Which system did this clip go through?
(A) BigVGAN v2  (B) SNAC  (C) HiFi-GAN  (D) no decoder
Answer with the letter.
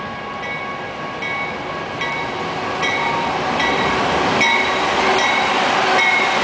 D